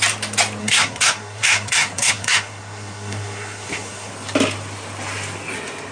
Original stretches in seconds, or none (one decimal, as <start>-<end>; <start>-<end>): 0.0-0.6; 4.1-5.9